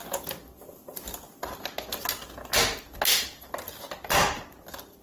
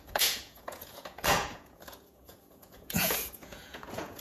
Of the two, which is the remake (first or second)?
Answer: second